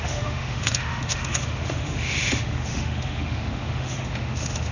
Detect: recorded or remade remade